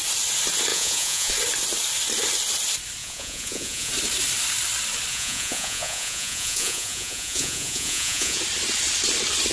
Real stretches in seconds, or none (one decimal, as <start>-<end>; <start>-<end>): 0.0-0.7; 1.3-3.0; 3.9-5.1; 8.4-9.5